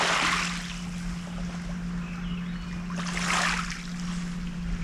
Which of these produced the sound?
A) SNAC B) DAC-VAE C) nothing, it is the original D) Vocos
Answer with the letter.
C